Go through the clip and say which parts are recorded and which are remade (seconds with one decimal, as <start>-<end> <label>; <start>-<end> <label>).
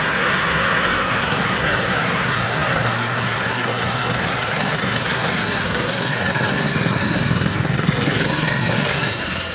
0.0-9.5 remade